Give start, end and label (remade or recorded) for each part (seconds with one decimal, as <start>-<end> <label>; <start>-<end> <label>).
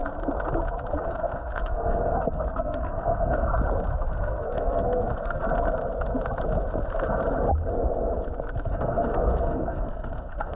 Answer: 0.0-1.0 recorded; 1.0-3.5 remade; 3.5-4.1 recorded; 4.1-5.4 remade; 5.4-8.7 recorded; 8.7-10.6 remade